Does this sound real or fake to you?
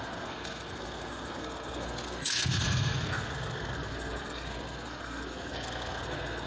fake